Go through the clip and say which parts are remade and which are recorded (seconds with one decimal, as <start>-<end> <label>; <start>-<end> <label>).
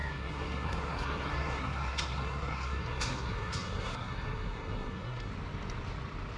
0.0-5.3 remade; 5.3-6.4 recorded